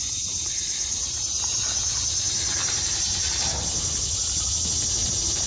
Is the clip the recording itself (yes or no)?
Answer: yes